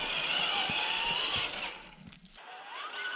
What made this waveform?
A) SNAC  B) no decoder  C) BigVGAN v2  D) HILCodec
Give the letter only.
B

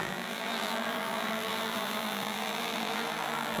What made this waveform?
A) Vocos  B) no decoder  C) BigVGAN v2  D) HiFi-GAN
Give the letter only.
C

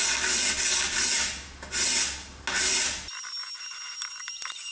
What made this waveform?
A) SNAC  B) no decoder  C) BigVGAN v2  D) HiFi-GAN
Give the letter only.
B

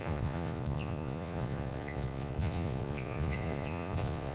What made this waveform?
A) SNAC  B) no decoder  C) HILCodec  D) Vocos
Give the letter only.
D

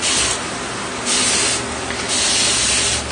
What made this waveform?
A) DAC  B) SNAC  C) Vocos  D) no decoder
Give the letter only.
D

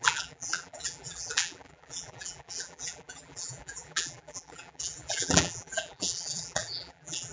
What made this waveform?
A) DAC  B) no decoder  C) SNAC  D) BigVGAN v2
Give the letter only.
D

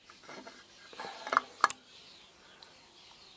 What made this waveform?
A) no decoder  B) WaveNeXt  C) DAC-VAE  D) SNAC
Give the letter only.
A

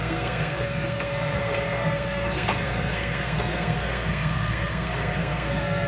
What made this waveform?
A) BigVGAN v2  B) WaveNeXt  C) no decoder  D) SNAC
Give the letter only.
D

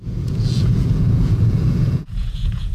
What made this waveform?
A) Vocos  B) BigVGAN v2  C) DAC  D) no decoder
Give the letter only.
A